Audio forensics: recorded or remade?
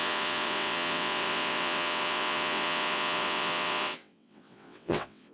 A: remade